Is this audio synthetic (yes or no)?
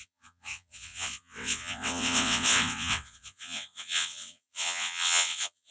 yes